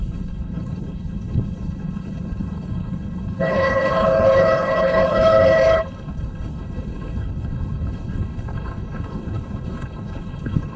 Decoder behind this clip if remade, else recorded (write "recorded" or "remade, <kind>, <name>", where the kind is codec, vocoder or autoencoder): remade, codec, HILCodec